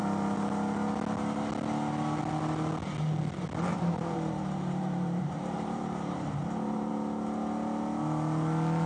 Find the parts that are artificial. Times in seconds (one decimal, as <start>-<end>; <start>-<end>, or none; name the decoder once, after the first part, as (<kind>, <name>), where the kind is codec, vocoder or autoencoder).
3.7-6.9 (vocoder, BigVGAN v2)